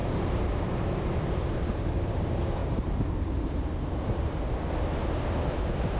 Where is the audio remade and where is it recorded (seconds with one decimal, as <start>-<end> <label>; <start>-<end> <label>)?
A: 0.0-2.2 remade; 2.2-2.6 recorded; 2.6-4.2 remade; 4.2-6.0 recorded